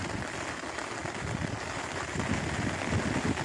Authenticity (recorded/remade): recorded